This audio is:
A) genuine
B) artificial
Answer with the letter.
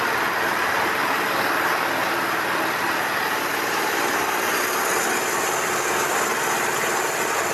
A